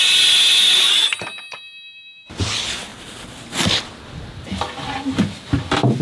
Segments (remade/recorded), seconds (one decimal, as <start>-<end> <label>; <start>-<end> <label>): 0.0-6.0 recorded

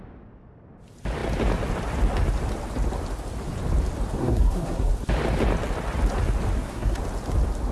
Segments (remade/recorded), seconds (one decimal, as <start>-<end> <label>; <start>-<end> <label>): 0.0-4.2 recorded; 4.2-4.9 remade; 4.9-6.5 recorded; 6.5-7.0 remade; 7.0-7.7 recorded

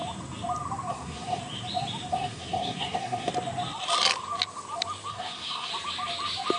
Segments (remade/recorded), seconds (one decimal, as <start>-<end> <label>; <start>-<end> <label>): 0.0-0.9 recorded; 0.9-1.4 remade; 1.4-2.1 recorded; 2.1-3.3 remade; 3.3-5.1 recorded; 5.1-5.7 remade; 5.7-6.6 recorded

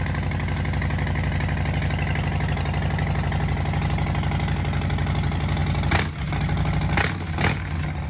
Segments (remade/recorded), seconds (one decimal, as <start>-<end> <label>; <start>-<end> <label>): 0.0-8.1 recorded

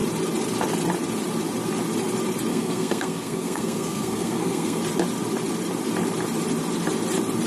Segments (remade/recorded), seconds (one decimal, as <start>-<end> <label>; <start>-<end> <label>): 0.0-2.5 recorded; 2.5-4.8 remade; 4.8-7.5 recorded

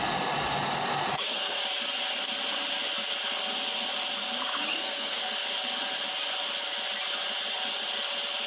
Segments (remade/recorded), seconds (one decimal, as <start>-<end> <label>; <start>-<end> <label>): 0.0-1.1 recorded; 1.1-1.6 remade; 1.6-4.7 recorded; 4.7-5.2 remade; 5.2-8.5 recorded

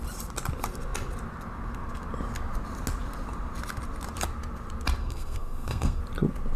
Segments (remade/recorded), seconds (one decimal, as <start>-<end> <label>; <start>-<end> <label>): 0.0-5.0 recorded; 5.0-6.0 remade; 6.0-6.6 recorded